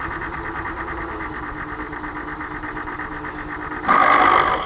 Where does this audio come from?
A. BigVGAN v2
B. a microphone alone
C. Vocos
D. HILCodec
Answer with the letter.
B